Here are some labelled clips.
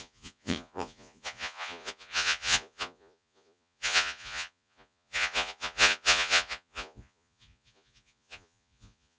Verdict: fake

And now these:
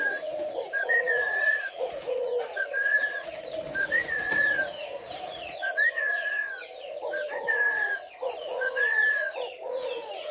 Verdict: fake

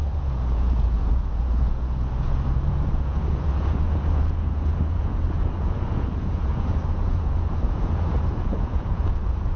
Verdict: fake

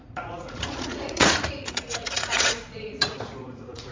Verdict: fake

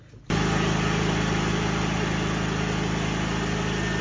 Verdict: real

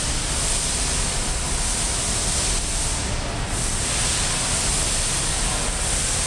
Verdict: real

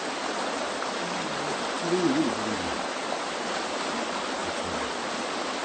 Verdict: real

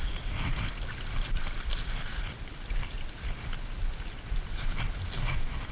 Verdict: real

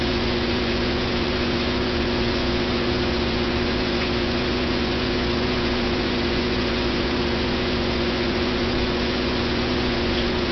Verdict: fake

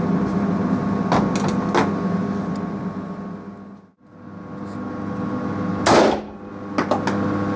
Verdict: real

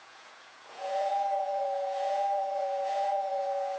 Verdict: fake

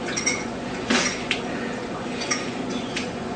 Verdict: fake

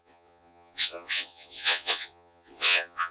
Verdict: fake